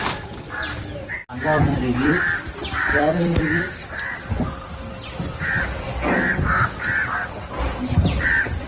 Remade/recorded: remade